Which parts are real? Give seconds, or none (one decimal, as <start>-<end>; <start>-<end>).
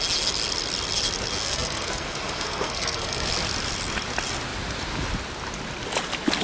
0.0-1.4; 3.3-6.4